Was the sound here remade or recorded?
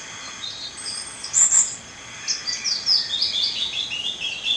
recorded